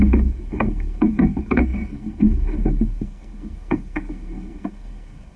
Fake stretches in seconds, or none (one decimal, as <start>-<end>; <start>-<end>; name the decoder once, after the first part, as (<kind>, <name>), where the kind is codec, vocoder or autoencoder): 0.0-5.4 (codec, SNAC)